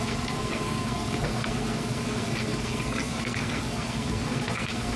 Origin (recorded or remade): remade